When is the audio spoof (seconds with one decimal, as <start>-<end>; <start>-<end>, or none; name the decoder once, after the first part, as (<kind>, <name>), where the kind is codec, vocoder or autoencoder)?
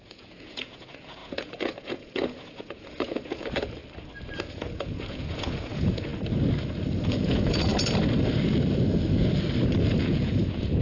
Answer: 0.0-3.8 (vocoder, Vocos); 4.4-6.1; 7.0-7.7; 10.0-10.8